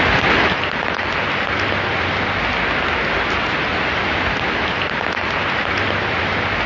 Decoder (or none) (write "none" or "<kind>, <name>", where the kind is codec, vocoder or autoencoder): none